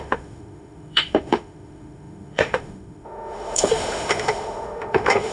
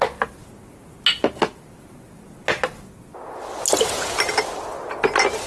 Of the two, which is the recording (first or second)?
second